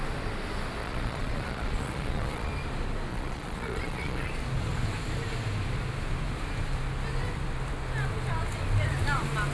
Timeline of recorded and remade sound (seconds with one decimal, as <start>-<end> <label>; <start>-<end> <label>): 0.0-0.8 recorded; 0.8-2.5 remade; 2.5-3.1 recorded; 3.1-4.3 remade; 4.3-9.5 recorded